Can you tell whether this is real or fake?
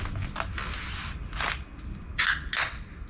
real